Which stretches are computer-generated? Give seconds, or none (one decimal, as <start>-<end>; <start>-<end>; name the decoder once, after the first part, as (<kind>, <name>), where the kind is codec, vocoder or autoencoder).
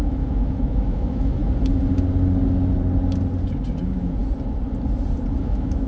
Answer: 0.0-1.4 (autoencoder, DAC-VAE); 3.8-4.2; 5.4-5.9